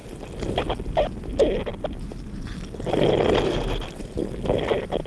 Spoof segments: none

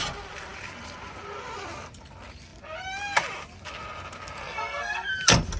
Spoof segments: 4.4-5.1 (codec, SNAC)

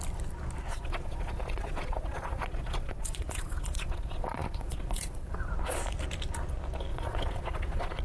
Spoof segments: 0.7-5.5 (vocoder, Vocos); 6.9-8.0